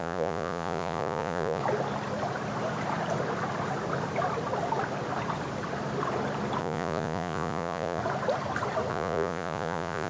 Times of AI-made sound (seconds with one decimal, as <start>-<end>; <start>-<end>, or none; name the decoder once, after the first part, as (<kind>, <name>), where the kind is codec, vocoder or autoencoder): 0.0-1.6 (vocoder, Vocos); 6.6-8.0; 8.9-10.1